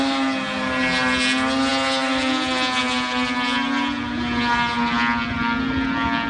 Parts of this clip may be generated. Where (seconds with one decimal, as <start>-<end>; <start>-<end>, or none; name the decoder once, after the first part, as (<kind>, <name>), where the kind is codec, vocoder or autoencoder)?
none